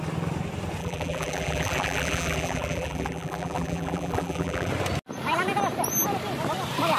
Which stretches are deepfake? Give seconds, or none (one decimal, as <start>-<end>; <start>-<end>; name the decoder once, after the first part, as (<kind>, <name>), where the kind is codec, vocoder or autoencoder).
0.8-4.7 (vocoder, BigVGAN v2)

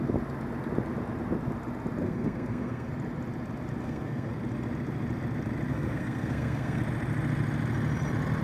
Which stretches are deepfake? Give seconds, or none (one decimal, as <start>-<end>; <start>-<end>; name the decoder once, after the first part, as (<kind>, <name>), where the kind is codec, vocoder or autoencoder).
2.0-2.9 (codec, SNAC); 3.8-4.3; 5.7-6.8

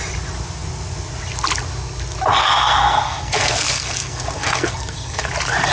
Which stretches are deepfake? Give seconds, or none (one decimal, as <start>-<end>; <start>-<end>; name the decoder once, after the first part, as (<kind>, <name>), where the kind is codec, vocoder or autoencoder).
2.4-5.3 (codec, SNAC)

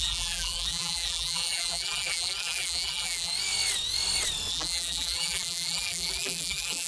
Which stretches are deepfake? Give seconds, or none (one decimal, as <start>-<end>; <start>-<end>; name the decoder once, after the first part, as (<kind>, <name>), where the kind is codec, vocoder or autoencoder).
0.0-3.3 (vocoder, BigVGAN v2); 4.5-6.9

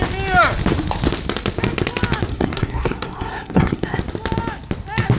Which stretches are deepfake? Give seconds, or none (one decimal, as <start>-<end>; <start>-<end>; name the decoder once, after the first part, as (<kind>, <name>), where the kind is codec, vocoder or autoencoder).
2.3-4.0 (codec, SNAC)

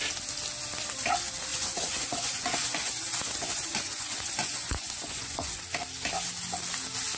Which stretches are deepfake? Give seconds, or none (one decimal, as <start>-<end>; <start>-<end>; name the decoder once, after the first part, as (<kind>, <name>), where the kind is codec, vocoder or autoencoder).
1.5-5.6 (vocoder, Vocos)